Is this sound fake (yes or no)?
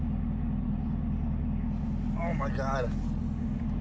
no